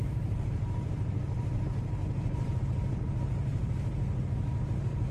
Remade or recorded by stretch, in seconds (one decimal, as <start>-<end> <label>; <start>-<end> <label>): 0.0-1.1 remade; 1.1-2.0 recorded; 2.0-2.6 remade; 2.6-5.1 recorded